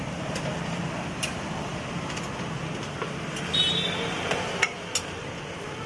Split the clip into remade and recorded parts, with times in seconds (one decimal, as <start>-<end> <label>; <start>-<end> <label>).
0.0-5.9 recorded